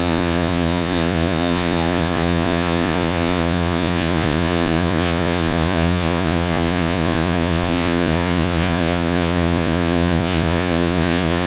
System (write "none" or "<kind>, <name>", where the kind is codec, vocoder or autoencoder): vocoder, Vocos